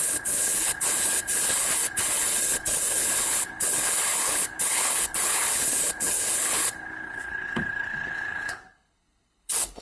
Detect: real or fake fake